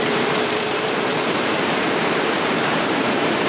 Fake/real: fake